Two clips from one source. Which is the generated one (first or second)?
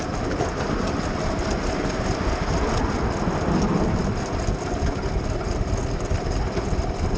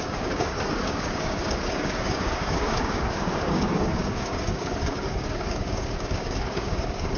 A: second